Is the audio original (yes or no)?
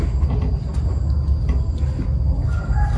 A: yes